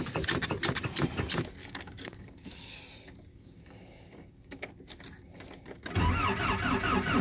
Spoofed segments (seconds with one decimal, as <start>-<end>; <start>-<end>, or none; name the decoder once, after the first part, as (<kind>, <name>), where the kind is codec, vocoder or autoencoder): 1.6-2.8 (codec, DAC); 3.3-4.7